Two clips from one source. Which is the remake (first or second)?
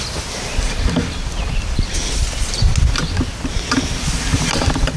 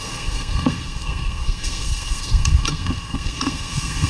second